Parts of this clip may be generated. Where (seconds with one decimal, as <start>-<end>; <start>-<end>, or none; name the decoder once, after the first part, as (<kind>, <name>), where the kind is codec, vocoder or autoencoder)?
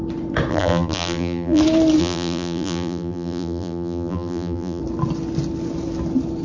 0.5-1.6 (vocoder, BigVGAN v2); 2.0-4.8